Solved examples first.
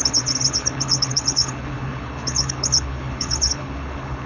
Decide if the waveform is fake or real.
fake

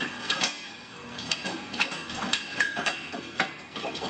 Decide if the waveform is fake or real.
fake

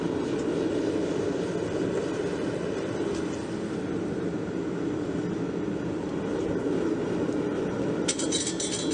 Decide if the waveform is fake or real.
real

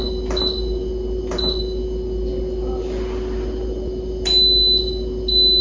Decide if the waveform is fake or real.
real